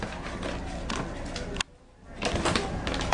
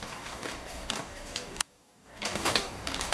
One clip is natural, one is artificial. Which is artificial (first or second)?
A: second